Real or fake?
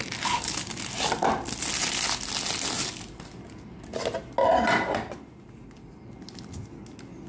real